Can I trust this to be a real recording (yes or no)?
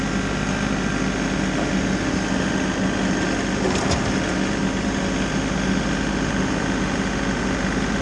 yes